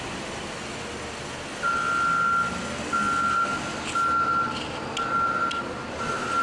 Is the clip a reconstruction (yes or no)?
no